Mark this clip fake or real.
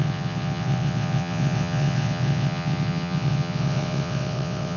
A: fake